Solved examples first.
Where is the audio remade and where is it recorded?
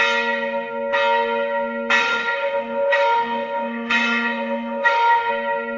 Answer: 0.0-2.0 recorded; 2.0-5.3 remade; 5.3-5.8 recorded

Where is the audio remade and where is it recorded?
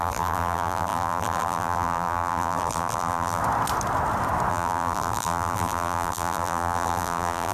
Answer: 0.0-3.4 remade; 3.4-4.5 recorded; 4.5-7.5 remade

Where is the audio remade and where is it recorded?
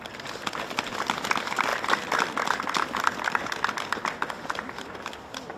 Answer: 0.0-5.6 recorded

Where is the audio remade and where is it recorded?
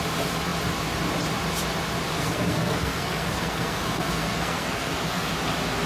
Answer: 0.0-2.1 recorded; 2.1-5.3 remade; 5.3-5.9 recorded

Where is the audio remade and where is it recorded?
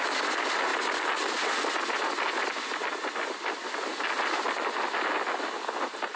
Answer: 0.0-6.2 recorded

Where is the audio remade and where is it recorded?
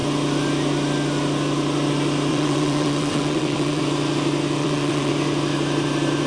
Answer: 0.0-2.3 recorded; 2.3-3.8 remade; 3.8-4.6 recorded; 4.6-5.1 remade; 5.1-6.3 recorded